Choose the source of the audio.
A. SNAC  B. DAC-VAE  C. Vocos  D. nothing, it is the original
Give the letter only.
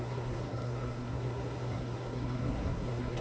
A